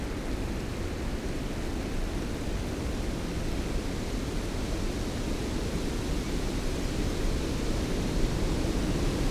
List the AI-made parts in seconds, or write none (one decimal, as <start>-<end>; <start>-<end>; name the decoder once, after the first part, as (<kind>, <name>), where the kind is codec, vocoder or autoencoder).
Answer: none